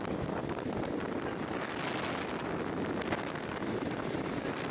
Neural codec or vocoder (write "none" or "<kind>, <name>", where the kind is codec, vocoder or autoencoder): none